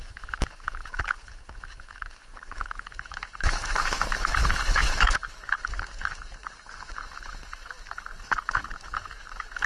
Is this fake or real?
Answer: fake